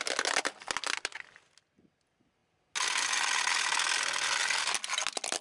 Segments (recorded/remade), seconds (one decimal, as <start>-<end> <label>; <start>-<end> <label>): 0.0-5.4 recorded